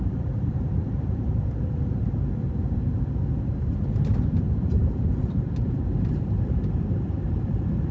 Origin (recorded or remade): remade